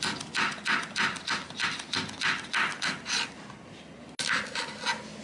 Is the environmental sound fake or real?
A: real